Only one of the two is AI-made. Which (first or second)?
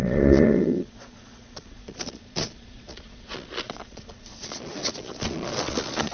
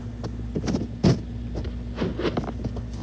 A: first